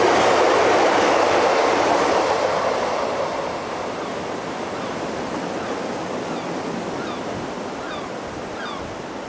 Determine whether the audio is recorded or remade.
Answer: recorded